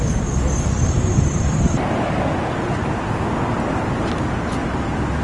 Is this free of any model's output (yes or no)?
yes